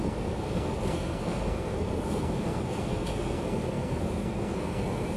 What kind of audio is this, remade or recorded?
remade